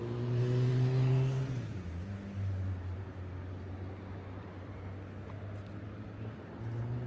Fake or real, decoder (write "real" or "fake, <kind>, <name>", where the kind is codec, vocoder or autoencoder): real